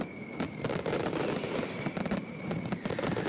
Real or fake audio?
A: fake